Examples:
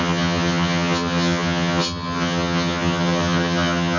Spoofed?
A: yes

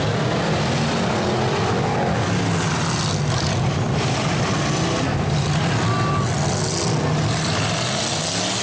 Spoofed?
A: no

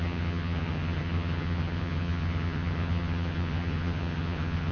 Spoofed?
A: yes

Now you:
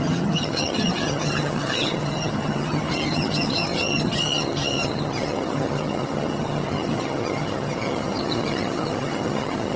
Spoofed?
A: yes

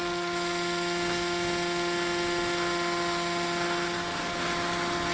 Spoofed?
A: no